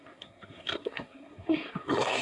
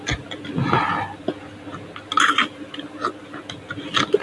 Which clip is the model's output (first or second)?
first